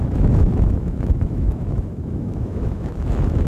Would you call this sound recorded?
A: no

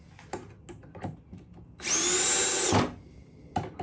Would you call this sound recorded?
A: yes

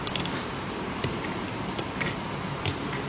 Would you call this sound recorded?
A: no